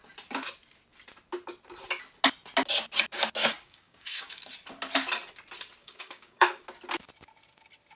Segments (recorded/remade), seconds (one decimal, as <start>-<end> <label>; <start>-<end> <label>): 0.0-3.4 recorded; 3.4-4.4 remade; 4.4-5.8 recorded; 5.8-6.6 remade; 6.6-8.0 recorded